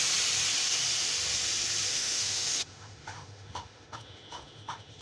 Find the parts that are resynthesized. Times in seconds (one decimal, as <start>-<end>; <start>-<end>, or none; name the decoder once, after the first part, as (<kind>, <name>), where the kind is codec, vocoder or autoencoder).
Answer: 1.9-5.0 (autoencoder, DAC-VAE)